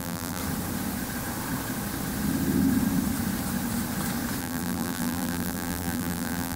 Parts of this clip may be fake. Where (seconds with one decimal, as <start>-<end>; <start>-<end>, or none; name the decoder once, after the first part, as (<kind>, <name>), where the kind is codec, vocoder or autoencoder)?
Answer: 0.0-0.4 (vocoder, BigVGAN v2); 4.4-6.6